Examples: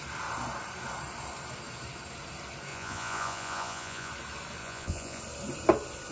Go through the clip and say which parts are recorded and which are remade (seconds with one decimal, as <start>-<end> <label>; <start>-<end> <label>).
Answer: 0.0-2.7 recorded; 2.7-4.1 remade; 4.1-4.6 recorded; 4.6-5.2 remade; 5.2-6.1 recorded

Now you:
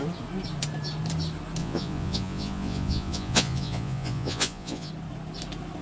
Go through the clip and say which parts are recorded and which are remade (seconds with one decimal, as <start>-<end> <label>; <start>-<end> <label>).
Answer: 0.0-1.6 recorded; 1.6-4.9 remade; 4.9-5.8 recorded

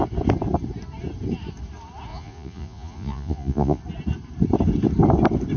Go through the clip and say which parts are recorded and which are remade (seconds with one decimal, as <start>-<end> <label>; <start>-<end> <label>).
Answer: 0.0-2.1 recorded; 2.1-3.8 remade; 3.8-5.6 recorded